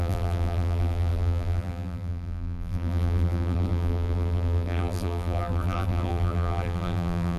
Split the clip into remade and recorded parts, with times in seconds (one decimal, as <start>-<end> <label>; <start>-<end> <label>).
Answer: 0.0-7.4 remade